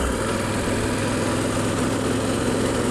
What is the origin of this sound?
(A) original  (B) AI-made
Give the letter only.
A